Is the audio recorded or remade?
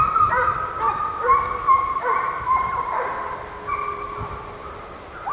recorded